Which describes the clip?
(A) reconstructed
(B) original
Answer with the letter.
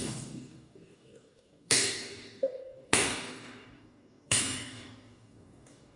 A